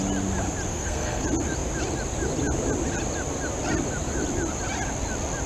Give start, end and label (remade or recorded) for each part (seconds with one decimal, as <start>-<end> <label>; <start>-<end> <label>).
0.0-0.7 recorded; 0.7-1.2 remade; 1.2-5.5 recorded